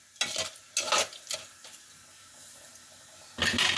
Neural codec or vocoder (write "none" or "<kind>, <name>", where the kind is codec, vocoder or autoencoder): none